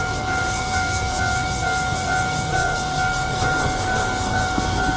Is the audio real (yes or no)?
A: no